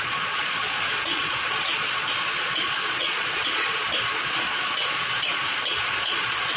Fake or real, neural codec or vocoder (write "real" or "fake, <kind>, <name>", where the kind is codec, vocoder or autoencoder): fake, vocoder, Vocos